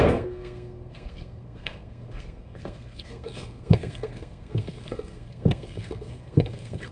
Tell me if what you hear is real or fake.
fake